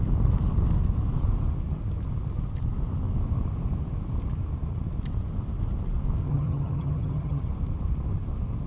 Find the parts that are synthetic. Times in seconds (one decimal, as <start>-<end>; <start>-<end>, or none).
6.3-7.5